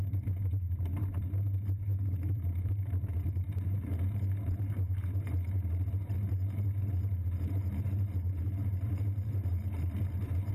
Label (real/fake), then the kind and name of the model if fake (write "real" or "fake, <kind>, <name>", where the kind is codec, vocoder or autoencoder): fake, vocoder, BigVGAN v2